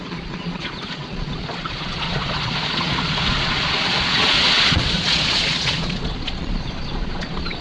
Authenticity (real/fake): fake